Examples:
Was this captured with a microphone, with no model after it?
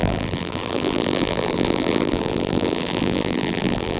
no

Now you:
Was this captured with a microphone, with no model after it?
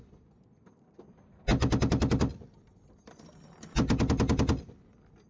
yes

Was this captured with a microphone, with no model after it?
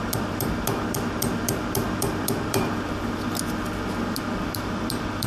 no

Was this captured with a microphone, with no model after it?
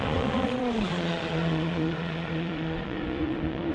no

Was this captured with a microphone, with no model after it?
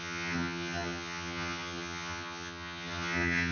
no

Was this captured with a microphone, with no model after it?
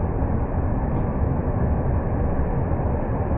no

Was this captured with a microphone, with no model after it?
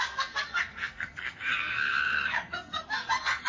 no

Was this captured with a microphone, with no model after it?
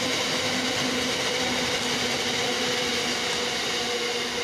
yes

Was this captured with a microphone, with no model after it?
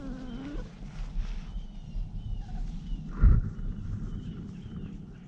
yes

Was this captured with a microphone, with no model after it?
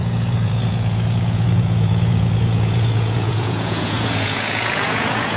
no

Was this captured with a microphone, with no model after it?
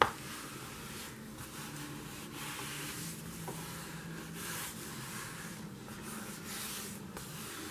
yes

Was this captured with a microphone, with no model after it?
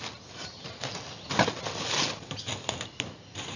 yes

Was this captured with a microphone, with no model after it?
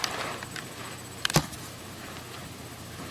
no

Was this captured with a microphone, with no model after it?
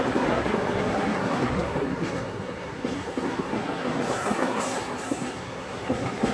no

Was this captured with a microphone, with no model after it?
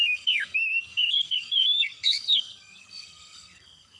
no